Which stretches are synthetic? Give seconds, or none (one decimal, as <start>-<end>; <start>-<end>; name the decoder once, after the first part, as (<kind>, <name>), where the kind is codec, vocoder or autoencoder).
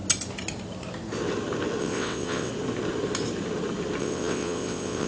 1.8-2.5 (vocoder, WaveNeXt); 4.0-5.1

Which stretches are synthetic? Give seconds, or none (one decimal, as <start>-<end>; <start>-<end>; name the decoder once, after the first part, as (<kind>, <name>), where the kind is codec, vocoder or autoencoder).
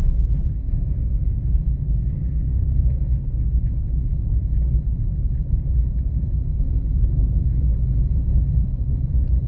0.5-3.6 (codec, SNAC); 7.0-7.7; 8.3-8.9